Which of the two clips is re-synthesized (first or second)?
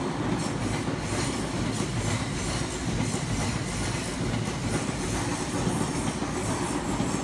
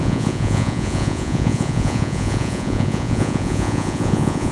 second